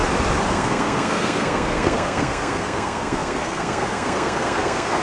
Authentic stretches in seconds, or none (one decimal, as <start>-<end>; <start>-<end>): 0.0-0.5